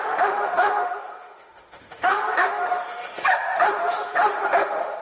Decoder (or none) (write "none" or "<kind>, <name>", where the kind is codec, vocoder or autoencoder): autoencoder, DAC-VAE